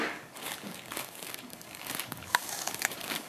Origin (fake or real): fake